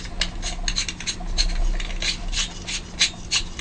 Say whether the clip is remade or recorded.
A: recorded